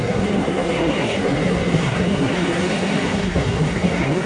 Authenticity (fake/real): fake